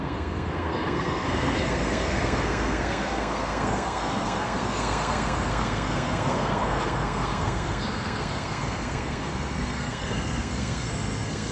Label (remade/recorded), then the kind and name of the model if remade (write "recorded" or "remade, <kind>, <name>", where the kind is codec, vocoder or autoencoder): remade, codec, SNAC